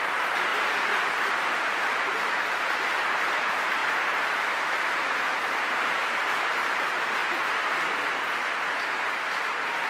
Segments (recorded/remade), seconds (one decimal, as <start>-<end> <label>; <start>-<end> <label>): 0.0-0.5 remade; 0.5-1.3 recorded; 1.3-9.9 remade